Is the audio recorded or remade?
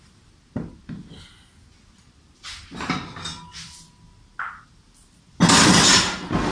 recorded